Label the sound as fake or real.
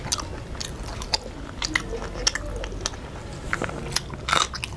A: real